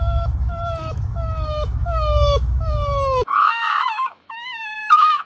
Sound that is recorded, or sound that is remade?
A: remade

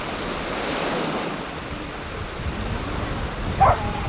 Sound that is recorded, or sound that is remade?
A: recorded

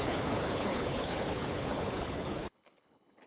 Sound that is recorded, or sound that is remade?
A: remade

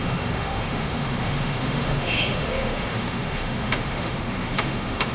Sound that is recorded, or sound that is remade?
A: remade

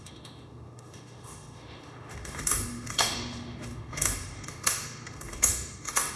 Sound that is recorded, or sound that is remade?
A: remade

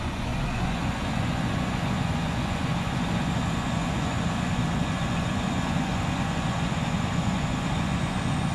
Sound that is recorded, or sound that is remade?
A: remade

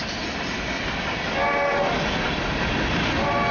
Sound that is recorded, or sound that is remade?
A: recorded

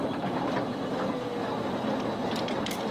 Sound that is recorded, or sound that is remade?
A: recorded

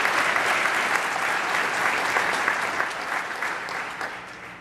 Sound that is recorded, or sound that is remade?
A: recorded